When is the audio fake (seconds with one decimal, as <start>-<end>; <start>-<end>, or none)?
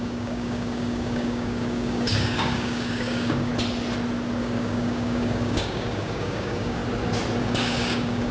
0.0-3.5; 4.4-6.8; 7.4-8.3